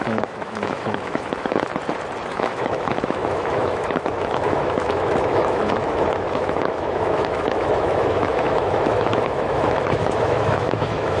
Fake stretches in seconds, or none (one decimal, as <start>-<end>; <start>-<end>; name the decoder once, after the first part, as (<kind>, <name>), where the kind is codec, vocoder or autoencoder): 0.0-1.7 (autoencoder, DAC-VAE); 2.3-11.2